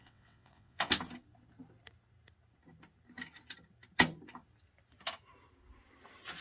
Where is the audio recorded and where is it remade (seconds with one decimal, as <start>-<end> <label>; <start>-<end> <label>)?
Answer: 0.0-0.9 remade; 0.9-6.4 recorded